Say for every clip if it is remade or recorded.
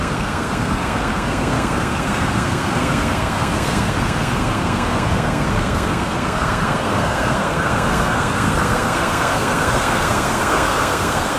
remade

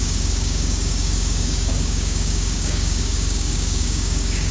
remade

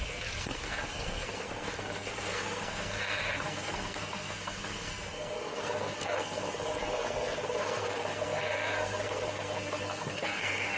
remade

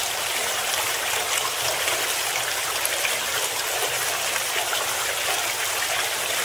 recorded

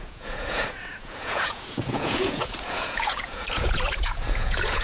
remade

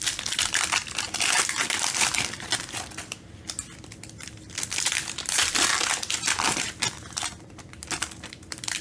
remade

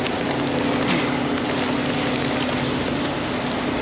recorded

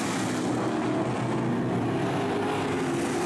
recorded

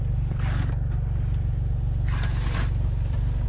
recorded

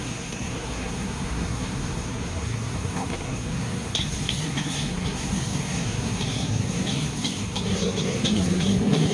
remade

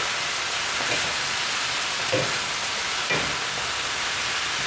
recorded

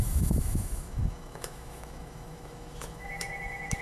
remade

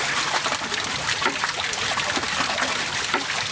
recorded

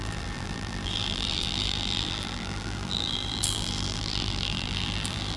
remade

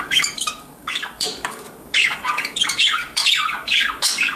remade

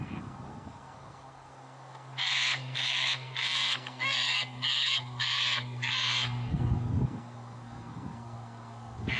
remade